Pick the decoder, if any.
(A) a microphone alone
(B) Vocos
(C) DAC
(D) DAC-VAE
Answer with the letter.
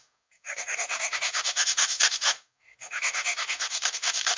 C